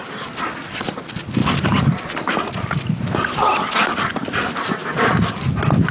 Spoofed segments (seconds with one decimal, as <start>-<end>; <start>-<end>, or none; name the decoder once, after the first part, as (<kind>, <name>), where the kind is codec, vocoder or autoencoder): none